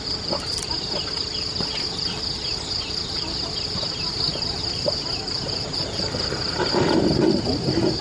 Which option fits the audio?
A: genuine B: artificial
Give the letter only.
A